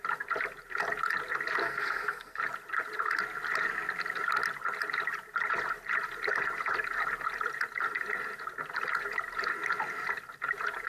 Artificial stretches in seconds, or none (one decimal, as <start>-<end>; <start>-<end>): 1.6-2.4